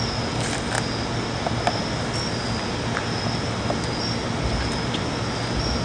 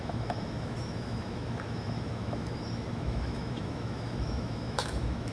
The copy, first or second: second